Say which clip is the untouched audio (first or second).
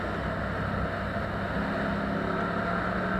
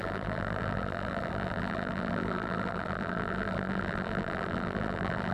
first